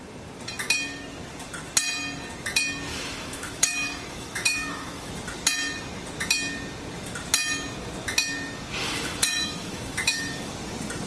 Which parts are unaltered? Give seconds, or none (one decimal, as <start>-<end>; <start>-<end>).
0.0-2.9; 5.1-8.8; 10.5-11.1